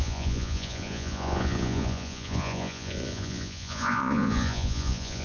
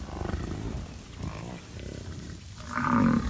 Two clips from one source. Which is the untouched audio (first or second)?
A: second